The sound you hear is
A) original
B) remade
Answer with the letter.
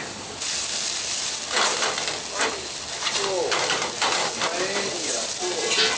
A